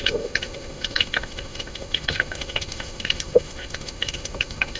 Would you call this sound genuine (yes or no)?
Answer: no